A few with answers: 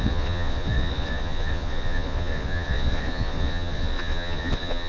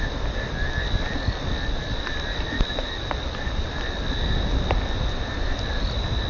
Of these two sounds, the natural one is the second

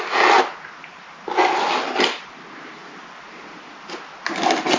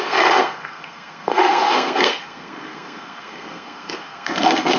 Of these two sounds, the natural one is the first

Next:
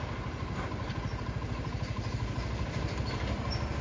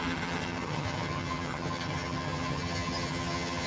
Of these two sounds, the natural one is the first